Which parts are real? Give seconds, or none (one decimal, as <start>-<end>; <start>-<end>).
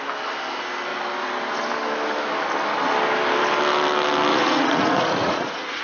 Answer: 0.0-4.3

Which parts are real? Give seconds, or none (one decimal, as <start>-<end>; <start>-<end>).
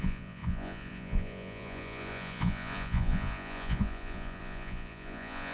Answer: none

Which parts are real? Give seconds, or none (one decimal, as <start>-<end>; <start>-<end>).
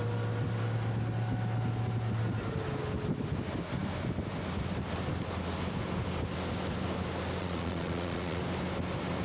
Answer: 0.0-7.4; 8.4-9.2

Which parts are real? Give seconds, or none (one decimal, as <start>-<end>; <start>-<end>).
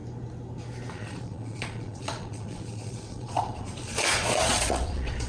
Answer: 0.0-0.9